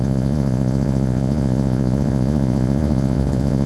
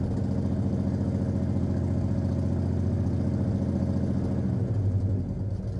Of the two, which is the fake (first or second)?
first